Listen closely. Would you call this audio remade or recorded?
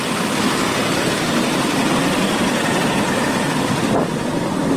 recorded